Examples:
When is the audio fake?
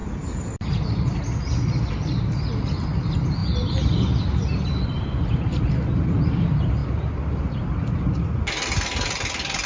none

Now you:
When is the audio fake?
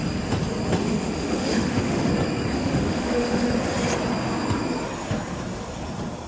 0.8-2.1 (autoencoder, DAC-VAE); 2.6-3.5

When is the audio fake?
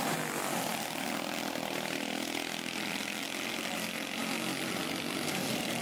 none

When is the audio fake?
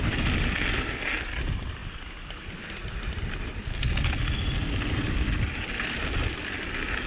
none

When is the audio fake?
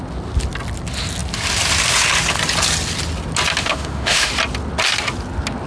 3.6-4.3 (autoencoder, DAC-VAE)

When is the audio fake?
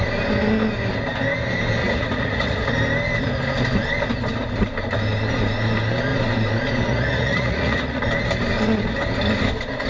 1.8-2.7 (vocoder, Vocos); 6.9-8.0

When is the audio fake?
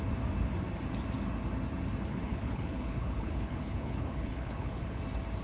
2.1-5.0 (codec, HILCodec)